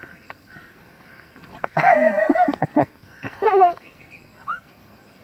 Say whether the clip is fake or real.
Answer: fake